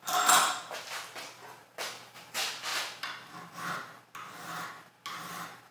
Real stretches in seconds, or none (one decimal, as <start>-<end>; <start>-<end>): 0.0-5.7